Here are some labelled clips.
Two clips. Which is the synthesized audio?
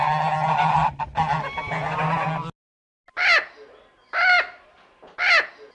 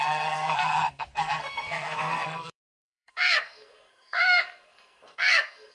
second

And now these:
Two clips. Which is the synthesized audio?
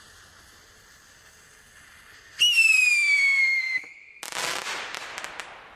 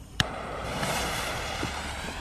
second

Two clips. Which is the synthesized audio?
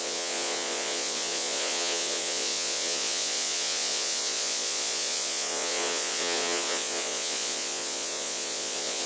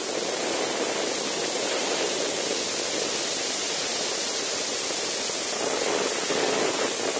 first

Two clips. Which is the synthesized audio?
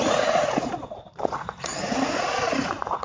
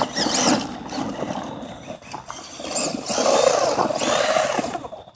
first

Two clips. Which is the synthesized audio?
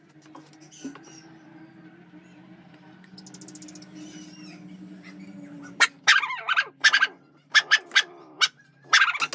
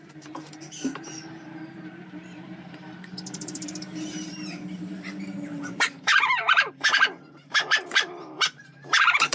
second